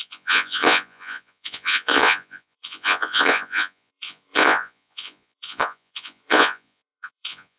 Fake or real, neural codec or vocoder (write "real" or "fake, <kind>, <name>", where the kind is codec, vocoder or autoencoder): fake, vocoder, Vocos